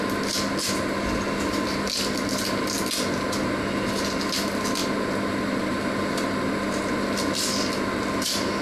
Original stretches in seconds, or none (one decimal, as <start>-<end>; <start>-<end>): 0.0-8.6